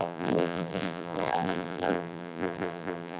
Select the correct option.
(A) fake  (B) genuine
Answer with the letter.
A